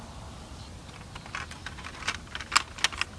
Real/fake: real